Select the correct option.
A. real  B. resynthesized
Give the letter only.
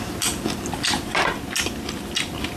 A